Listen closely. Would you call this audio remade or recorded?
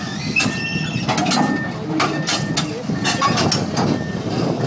recorded